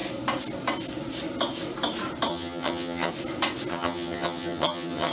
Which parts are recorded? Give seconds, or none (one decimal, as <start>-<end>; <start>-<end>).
0.0-2.3; 3.1-3.7